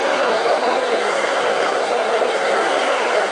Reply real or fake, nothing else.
fake